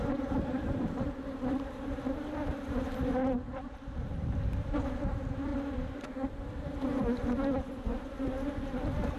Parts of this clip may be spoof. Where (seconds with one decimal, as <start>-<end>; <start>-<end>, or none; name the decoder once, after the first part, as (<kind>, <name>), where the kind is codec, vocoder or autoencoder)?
0.0-5.5 (vocoder, BigVGAN v2); 7.6-9.2